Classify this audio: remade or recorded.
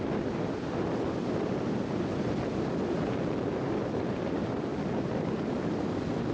recorded